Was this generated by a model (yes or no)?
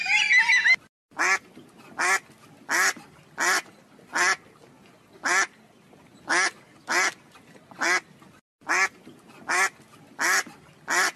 no